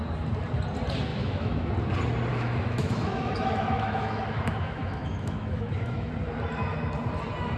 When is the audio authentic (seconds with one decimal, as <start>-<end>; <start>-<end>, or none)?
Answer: 0.0-1.1; 1.7-2.3; 6.1-7.6